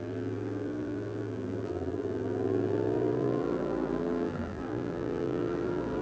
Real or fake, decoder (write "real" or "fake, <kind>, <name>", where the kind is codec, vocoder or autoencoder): fake, vocoder, BigVGAN v2